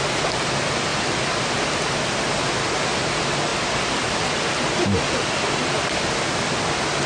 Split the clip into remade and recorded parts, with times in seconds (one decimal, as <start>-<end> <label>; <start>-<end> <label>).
0.0-0.9 recorded; 0.9-1.8 remade; 1.8-3.5 recorded; 3.5-6.0 remade; 6.0-7.1 recorded